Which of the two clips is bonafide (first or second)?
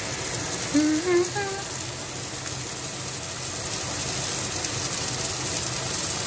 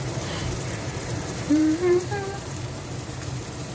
first